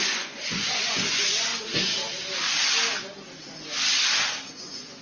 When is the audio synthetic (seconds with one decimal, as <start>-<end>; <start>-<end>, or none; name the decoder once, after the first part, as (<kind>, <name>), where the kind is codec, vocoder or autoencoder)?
0.0-1.5 (vocoder, Vocos); 4.5-5.0